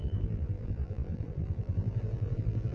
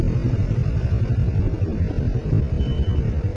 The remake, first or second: first